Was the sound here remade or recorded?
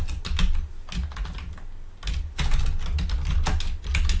recorded